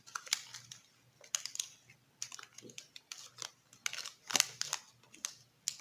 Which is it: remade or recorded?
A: recorded